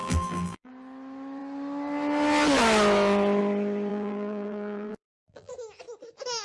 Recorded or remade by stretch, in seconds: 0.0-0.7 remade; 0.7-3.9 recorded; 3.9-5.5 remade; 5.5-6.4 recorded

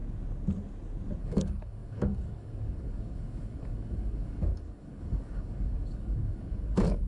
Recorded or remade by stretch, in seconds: 0.0-1.2 recorded; 1.2-7.1 remade

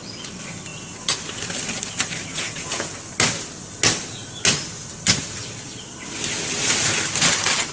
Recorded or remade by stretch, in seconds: 0.0-2.3 recorded; 2.3-2.9 remade; 2.9-7.7 recorded

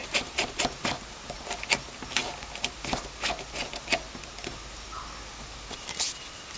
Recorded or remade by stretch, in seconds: 0.0-0.5 remade; 0.5-6.6 recorded

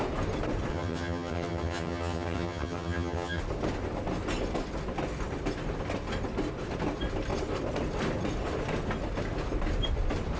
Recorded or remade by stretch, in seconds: 0.0-0.7 recorded; 0.7-3.4 remade; 3.4-10.4 recorded